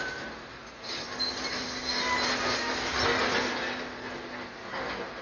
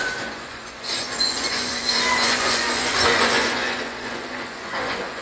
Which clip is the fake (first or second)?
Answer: second